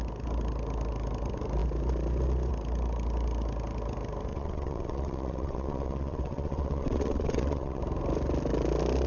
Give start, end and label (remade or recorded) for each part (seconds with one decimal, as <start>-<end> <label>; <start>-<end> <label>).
0.0-4.3 recorded; 4.3-7.8 remade; 7.8-9.1 recorded